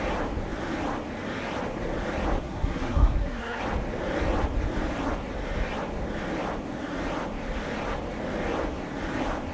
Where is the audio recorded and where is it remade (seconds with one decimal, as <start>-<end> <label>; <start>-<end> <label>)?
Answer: 0.0-2.4 recorded; 2.4-3.6 remade; 3.6-9.5 recorded